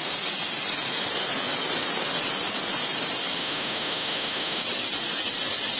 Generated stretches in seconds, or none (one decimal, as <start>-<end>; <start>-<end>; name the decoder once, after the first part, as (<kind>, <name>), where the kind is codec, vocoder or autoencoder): 3.4-4.6 (autoencoder, DAC-VAE)